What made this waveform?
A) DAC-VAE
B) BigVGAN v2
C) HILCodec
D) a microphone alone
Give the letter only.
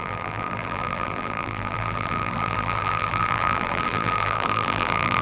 B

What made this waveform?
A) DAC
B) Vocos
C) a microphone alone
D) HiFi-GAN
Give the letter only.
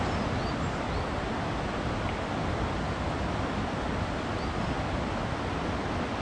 C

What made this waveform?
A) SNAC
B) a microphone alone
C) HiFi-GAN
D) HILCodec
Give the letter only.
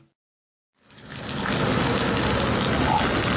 B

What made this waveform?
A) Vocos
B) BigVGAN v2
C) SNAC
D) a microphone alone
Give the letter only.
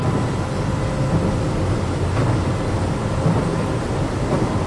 D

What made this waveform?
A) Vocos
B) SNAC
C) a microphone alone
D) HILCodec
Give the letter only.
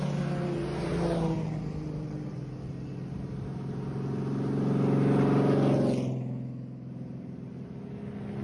C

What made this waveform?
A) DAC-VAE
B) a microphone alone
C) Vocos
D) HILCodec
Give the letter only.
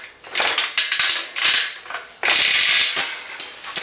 B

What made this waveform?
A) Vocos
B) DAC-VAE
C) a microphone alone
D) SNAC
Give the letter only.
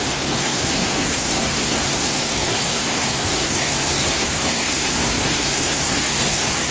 D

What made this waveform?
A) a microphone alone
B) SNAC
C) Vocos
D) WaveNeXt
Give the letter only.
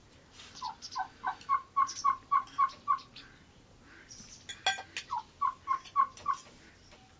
A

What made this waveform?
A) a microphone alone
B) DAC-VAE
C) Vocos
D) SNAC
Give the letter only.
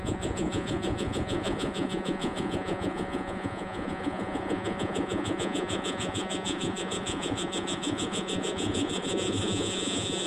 C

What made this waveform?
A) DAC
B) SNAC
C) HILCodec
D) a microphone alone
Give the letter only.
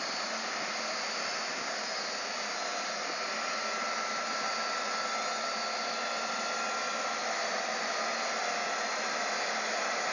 D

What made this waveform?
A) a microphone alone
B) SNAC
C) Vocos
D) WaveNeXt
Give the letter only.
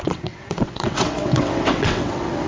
D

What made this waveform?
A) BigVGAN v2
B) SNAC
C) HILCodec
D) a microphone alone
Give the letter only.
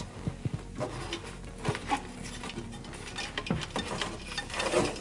D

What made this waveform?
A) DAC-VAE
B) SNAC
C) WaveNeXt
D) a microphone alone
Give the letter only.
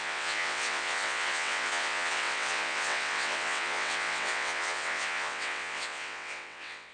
C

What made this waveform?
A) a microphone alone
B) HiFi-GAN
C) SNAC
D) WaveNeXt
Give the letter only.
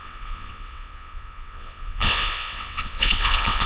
D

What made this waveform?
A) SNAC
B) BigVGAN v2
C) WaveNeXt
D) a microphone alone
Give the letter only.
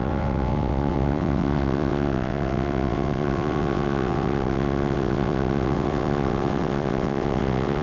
C